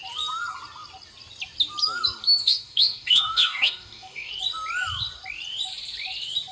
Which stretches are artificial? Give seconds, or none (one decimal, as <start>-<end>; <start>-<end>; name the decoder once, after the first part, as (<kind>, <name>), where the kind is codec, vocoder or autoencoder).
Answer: 2.4-4.3 (codec, DAC)